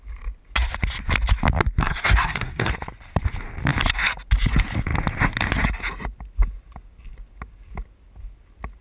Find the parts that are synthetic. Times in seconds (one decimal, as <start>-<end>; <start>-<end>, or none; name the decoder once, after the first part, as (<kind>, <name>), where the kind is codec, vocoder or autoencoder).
1.8-2.7 (codec, SNAC)

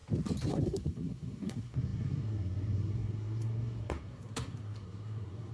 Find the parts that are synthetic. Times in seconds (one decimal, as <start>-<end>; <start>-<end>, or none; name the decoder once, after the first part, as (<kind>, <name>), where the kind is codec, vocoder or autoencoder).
0.5-5.5 (codec, SNAC)